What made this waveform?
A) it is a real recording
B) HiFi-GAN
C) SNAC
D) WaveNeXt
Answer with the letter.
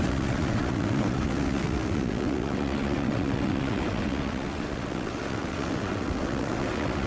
D